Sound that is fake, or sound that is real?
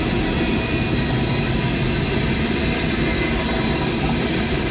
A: real